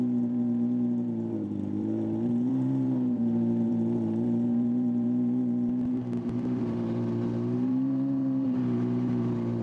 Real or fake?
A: fake